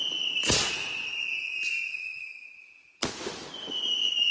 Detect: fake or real real